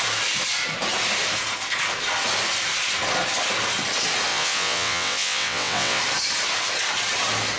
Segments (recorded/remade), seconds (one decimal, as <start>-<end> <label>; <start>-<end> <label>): 0.0-4.3 recorded; 4.3-6.0 remade; 6.0-7.6 recorded